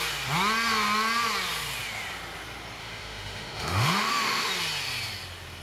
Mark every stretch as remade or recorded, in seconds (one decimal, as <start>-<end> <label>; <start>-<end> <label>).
0.0-2.8 recorded; 2.8-4.5 remade; 4.5-5.6 recorded

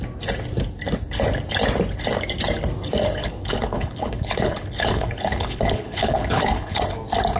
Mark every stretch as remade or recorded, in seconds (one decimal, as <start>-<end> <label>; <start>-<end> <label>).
0.0-3.2 recorded; 3.2-6.8 remade; 6.8-7.4 recorded